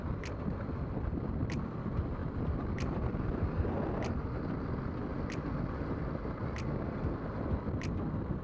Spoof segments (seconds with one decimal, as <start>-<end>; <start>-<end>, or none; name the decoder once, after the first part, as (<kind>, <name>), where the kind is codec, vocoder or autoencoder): 2.2-3.7 (vocoder, BigVGAN v2)